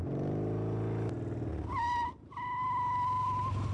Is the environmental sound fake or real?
real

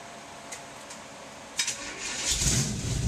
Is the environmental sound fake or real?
real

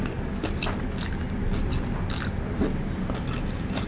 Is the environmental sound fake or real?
real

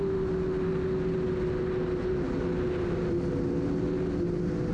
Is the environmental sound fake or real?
real